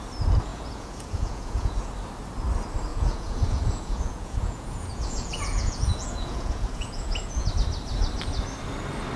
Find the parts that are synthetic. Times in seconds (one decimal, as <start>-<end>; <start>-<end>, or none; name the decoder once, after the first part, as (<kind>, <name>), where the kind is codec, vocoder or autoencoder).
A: 0.5-1.9 (vocoder, Vocos); 2.9-7.5